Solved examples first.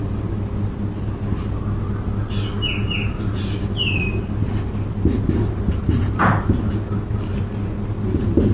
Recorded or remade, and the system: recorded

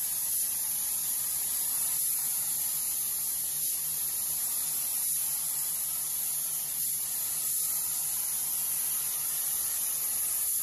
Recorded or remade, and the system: remade, vocoder, BigVGAN v2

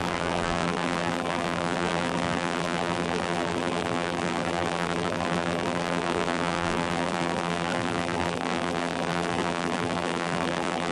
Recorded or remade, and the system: remade, vocoder, BigVGAN v2